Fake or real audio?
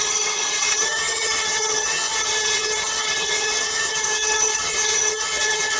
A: fake